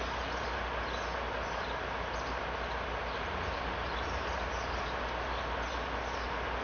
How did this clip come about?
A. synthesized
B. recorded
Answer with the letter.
B